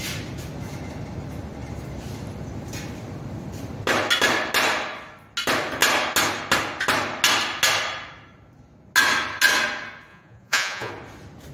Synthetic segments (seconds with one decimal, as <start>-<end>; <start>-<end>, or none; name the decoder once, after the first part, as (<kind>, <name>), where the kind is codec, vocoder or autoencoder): 10.1-10.9 (vocoder, Vocos)